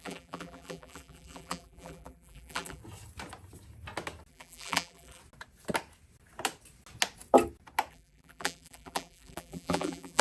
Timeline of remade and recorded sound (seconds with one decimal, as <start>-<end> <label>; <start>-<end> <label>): 0.0-2.8 remade; 2.8-4.3 recorded; 4.3-5.2 remade; 5.2-7.9 recorded; 7.9-10.2 remade